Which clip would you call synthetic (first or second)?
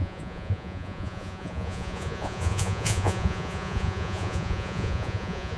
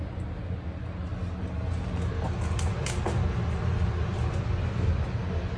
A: first